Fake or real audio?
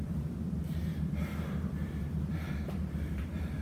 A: fake